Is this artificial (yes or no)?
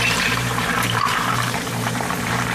yes